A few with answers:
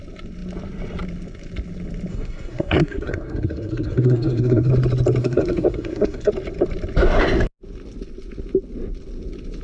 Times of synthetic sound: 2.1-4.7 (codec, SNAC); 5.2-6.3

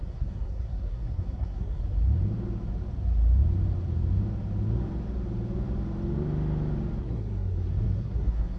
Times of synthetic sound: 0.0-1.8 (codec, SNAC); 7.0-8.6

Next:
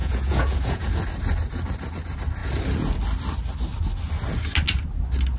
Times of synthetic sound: 0.0-0.9 (vocoder, Vocos)

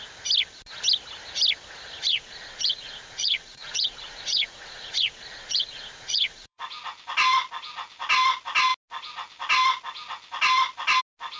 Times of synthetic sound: 2.1-6.6 (vocoder, Vocos)

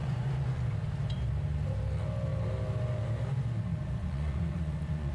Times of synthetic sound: 0.0-0.6 (vocoder, Vocos); 4.0-5.1

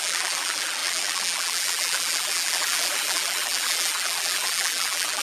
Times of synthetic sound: 0.0-5.2 (vocoder, BigVGAN v2)

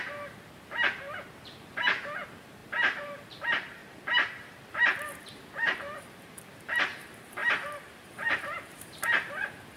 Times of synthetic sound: 0.0-3.8 (vocoder, BigVGAN v2); 4.3-9.8

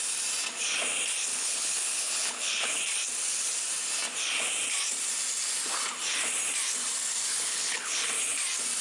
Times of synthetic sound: 1.3-2.8 (codec, HILCodec); 7.3-8.1